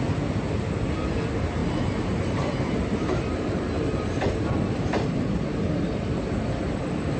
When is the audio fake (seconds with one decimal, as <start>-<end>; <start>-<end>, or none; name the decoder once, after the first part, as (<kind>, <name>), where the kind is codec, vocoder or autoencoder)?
1.6-5.5 (vocoder, BigVGAN v2)